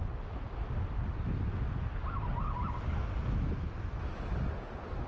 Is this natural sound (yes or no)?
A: yes